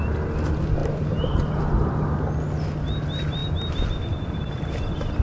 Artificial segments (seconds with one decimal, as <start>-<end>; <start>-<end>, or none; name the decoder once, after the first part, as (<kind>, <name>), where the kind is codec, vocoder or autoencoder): 0.8-1.6 (vocoder, BigVGAN v2)